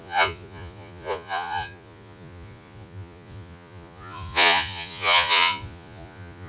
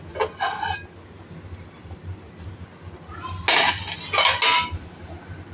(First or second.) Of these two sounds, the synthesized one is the first